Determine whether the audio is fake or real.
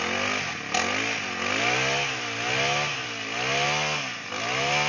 real